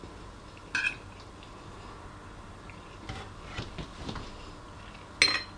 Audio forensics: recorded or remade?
recorded